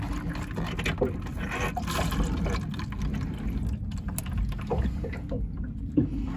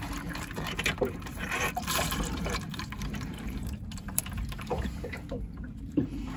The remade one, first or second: second